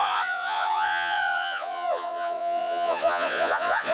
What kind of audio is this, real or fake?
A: fake